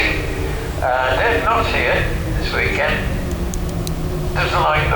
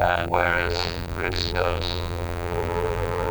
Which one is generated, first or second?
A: second